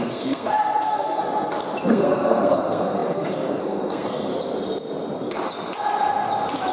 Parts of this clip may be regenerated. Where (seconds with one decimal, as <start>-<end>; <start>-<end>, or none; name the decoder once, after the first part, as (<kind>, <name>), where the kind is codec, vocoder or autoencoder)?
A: 0.0-1.2 (codec, SNAC); 1.9-4.3